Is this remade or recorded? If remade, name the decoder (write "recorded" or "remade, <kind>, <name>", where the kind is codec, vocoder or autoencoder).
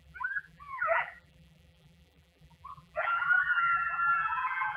remade, vocoder, BigVGAN v2